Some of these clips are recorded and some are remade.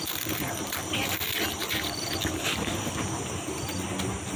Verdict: recorded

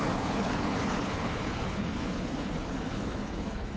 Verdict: remade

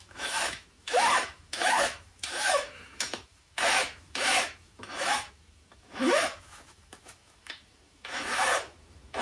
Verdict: remade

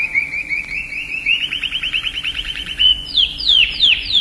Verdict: remade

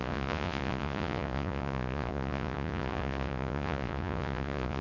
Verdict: remade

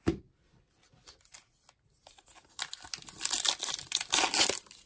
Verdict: recorded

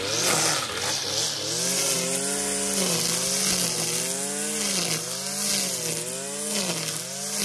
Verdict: recorded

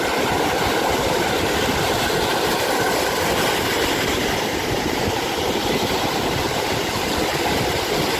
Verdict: remade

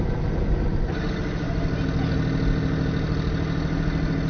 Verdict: recorded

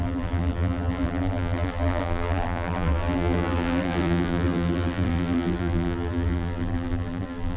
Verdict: remade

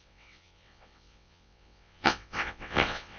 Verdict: remade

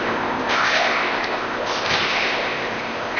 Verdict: remade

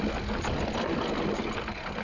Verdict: recorded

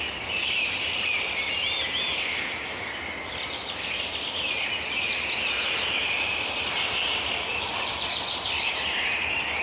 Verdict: recorded